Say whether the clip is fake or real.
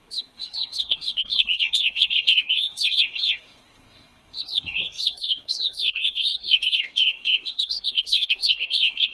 fake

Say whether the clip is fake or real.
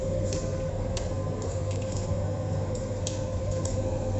fake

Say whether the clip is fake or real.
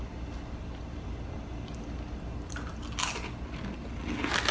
real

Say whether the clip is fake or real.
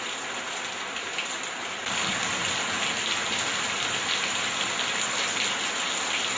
real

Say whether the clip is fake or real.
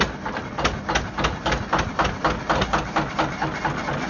real